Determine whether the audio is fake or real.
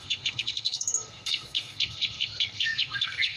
fake